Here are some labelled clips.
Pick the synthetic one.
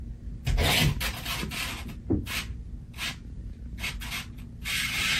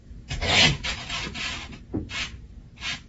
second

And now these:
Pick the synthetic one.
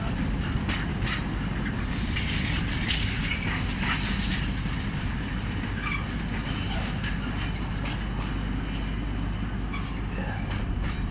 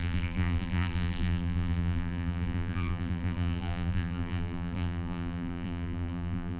second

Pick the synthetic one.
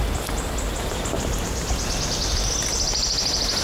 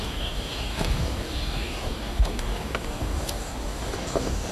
second